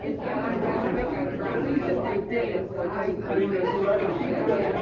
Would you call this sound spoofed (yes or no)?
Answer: yes